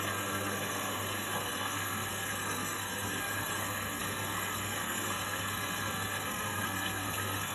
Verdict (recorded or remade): remade